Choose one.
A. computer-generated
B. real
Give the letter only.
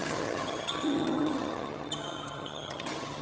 A